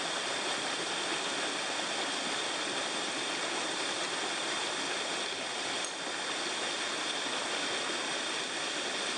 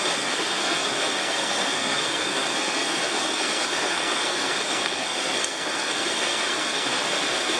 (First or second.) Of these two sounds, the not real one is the second